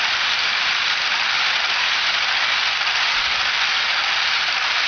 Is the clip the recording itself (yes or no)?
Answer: no